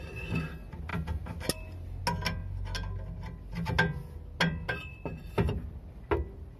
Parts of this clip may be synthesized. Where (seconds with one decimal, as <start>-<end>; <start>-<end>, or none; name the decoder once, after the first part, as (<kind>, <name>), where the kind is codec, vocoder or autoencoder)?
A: none